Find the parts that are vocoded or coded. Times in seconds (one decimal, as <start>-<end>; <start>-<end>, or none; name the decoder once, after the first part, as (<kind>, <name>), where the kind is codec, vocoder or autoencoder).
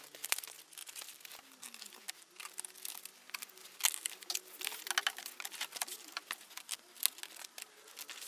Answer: none